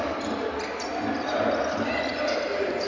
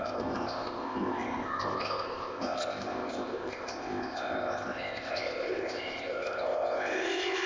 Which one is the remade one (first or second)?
second